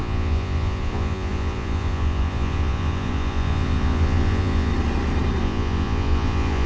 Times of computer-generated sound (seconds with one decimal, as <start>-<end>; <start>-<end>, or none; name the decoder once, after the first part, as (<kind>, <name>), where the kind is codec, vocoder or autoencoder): 0.0-4.7 (vocoder, Vocos); 5.4-6.7